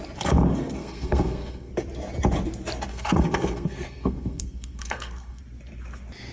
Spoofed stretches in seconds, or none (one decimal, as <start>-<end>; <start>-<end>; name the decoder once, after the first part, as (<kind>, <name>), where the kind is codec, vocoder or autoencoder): 0.8-1.7 (codec, SNAC); 2.9-5.4